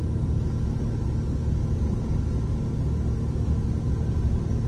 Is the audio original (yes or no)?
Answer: yes